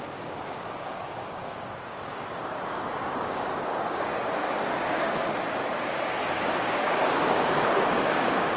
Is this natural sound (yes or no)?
no